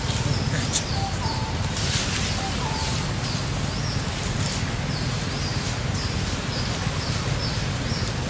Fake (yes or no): no